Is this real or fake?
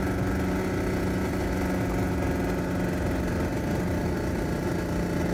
real